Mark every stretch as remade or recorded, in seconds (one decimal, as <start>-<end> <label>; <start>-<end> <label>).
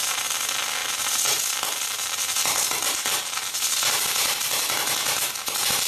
0.0-5.9 recorded